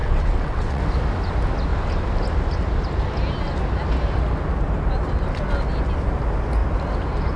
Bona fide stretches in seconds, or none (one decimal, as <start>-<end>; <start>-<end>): 0.8-7.4